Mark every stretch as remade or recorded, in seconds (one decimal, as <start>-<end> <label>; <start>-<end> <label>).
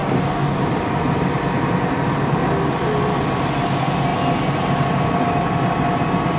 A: 0.0-0.6 remade; 0.6-6.4 recorded